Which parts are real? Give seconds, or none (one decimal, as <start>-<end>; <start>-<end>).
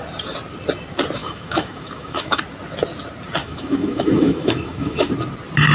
0.0-1.2; 2.4-3.4; 5.1-5.7